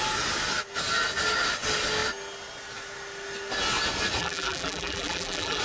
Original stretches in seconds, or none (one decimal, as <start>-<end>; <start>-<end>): 0.0-4.2